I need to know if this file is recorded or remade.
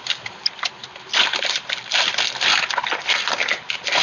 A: recorded